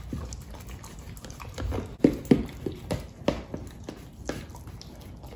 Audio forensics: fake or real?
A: real